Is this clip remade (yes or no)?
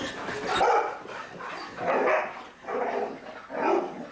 no